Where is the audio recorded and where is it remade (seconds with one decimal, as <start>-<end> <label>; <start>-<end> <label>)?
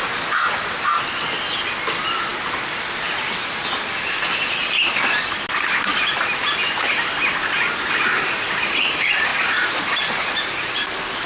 0.0-11.3 recorded